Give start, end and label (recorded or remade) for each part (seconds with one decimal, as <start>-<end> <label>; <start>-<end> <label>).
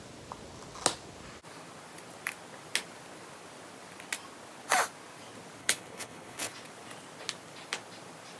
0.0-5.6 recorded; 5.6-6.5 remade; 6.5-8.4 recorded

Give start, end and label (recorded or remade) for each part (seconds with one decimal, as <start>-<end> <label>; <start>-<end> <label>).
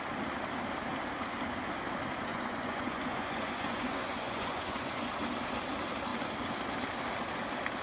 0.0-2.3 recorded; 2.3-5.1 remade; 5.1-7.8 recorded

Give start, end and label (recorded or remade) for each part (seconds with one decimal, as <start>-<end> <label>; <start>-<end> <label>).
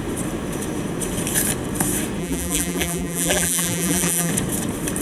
0.0-2.2 recorded; 2.2-4.3 remade; 4.3-5.0 recorded